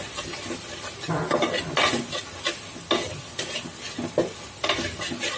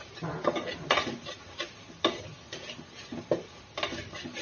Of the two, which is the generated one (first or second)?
second